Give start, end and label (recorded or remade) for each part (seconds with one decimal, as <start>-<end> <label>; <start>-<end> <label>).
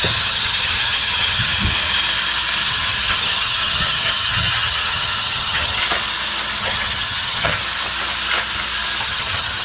0.0-1.5 remade; 1.5-2.7 recorded; 2.7-5.8 remade; 5.8-6.6 recorded; 6.6-7.6 remade; 7.6-9.0 recorded; 9.0-9.6 remade